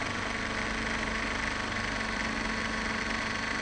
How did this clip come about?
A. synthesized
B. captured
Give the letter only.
B